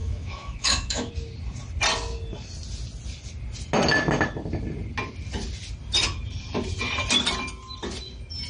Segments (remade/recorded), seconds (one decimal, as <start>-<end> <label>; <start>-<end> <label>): 0.0-1.1 remade; 1.1-8.5 recorded